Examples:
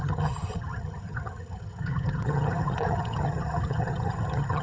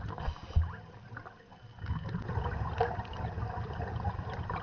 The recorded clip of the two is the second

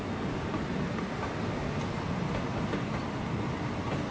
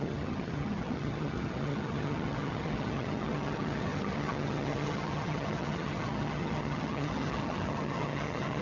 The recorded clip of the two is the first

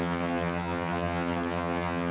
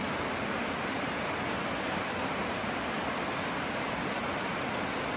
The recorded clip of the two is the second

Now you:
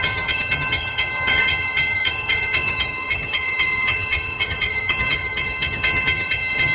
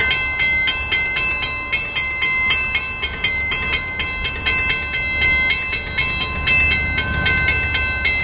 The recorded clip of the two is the second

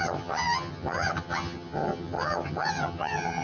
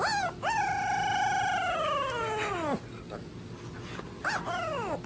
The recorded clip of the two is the second